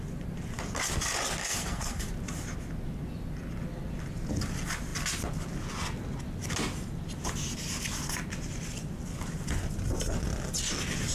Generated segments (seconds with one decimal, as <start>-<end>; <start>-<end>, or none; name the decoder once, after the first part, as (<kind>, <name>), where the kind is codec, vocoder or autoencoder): 1.4-2.1 (codec, SNAC)